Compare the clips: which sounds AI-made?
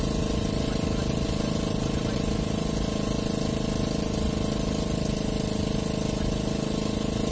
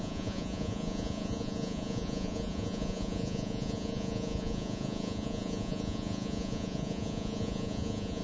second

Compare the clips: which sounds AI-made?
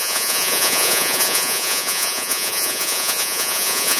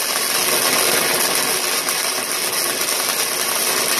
first